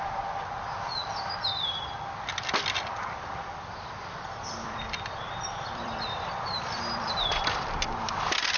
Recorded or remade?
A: remade